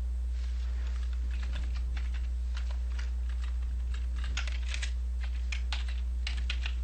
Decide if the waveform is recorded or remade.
recorded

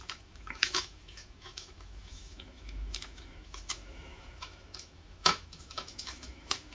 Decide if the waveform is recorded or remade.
remade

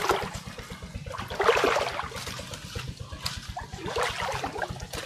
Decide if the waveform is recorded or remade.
recorded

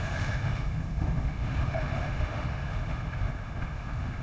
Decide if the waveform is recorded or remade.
remade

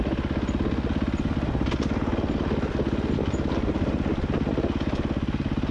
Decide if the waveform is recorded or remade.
recorded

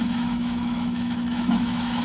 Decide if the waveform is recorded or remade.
remade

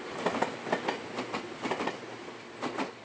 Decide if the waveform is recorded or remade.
recorded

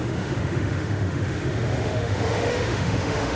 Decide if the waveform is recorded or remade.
remade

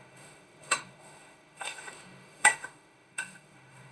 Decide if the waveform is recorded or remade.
remade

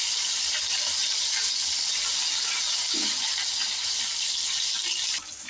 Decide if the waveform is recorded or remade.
recorded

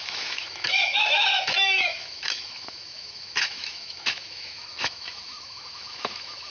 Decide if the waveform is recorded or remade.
remade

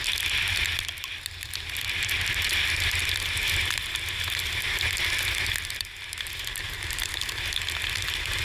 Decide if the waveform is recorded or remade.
recorded